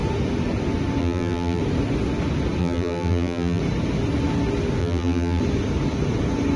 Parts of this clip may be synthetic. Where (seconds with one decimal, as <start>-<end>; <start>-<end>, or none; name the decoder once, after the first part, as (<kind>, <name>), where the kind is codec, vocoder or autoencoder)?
1.0-1.6 (vocoder, BigVGAN v2); 2.6-3.6; 4.8-5.4